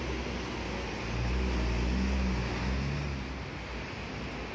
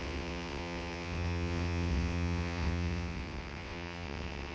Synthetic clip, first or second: second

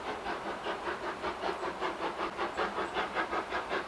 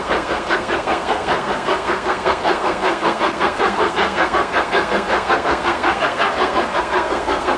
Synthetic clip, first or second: second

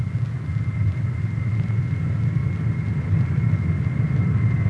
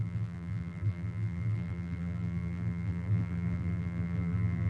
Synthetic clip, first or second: second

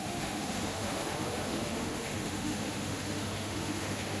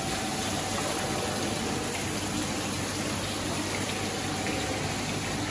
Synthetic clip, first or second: first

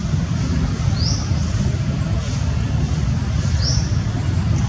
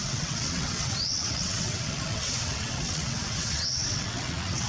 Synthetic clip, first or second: second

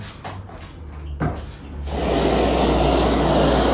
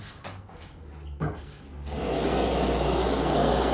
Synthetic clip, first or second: second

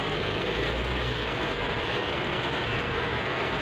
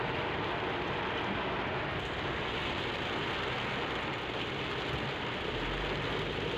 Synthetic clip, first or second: first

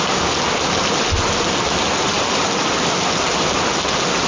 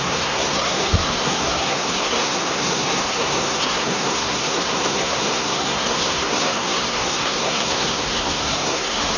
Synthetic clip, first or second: second